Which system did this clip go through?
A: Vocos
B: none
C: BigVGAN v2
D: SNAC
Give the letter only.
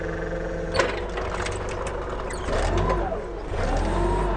B